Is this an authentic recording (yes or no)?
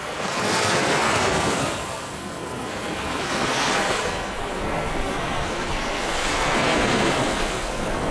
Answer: no